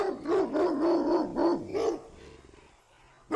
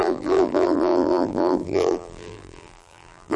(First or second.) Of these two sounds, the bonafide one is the first